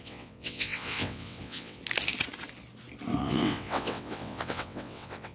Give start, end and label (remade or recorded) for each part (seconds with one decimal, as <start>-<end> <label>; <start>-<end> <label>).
0.0-1.8 remade; 1.8-3.2 recorded; 3.2-5.3 remade